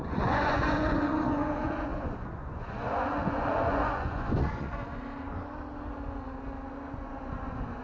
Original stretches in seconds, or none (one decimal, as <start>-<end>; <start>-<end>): 4.9-6.9